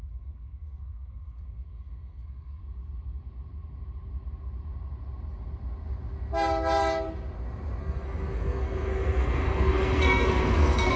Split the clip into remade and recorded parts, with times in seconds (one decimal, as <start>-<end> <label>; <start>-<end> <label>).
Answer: 0.0-2.6 remade; 2.6-7.8 recorded; 7.8-11.0 remade